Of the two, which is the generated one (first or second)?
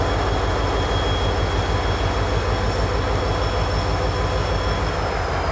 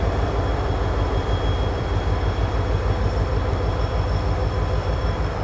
second